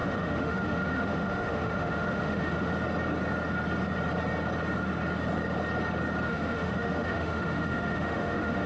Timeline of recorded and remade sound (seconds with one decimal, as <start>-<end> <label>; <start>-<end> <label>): 0.0-2.7 remade; 2.7-6.3 recorded; 6.3-8.7 remade